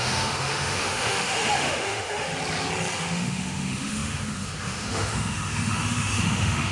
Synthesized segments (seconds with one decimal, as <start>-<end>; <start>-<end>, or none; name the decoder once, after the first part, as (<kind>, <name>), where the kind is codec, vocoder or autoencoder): 0.0-2.3 (autoencoder, DAC-VAE); 3.0-6.7